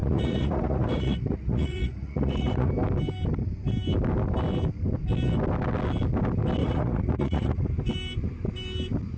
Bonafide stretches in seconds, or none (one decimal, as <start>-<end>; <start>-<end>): 2.7-6.6; 7.7-9.2